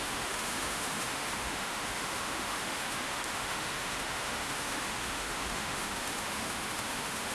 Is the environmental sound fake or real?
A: fake